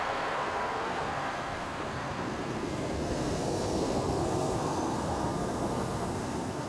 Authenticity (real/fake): fake